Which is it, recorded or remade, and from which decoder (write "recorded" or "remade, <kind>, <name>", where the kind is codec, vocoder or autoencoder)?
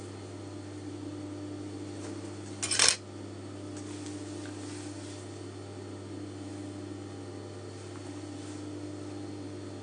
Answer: recorded